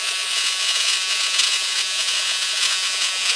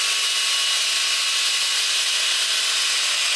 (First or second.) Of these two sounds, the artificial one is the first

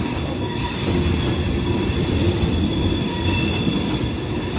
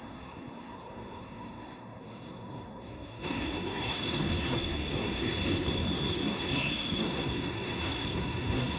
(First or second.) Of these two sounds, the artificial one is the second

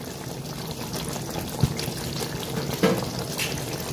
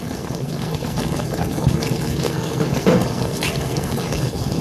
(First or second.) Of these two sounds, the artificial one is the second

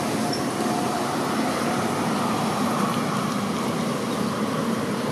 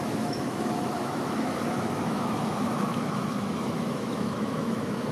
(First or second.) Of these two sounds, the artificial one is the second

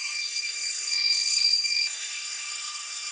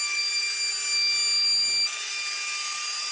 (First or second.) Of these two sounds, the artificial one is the first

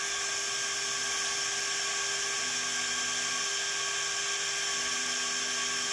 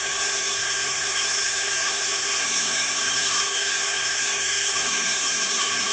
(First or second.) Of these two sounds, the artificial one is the second